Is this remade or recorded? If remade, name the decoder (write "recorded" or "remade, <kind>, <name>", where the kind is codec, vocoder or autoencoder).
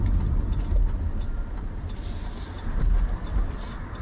recorded